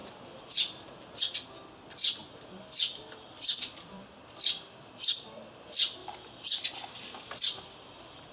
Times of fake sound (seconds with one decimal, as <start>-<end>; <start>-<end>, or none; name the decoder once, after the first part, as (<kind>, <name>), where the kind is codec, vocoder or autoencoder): 2.2-4.5 (vocoder, BigVGAN v2); 6.0-8.3